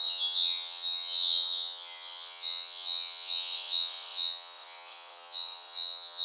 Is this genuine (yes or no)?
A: no